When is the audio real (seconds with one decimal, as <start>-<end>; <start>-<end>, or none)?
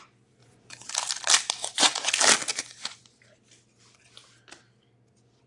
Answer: 0.0-0.4; 0.9-1.6; 2.1-2.5; 3.2-5.5